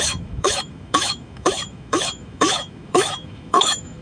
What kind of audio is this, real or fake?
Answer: fake